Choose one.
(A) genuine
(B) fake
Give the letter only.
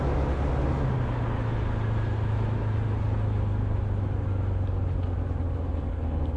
A